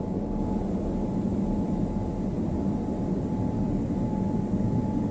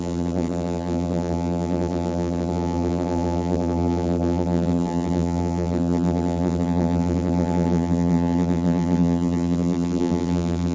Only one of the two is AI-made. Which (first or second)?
second